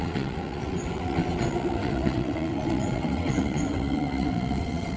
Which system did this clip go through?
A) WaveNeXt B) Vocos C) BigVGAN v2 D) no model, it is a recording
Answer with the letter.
A